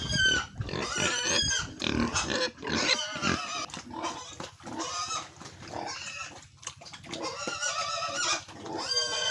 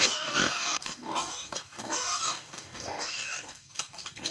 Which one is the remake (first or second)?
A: second